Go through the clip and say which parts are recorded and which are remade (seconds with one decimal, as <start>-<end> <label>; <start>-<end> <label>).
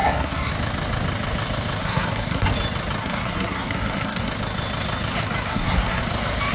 0.0-0.5 remade; 0.5-1.8 recorded; 1.8-2.5 remade; 2.5-3.0 recorded; 3.0-4.3 remade; 4.3-5.5 recorded; 5.5-6.0 remade; 6.0-6.5 recorded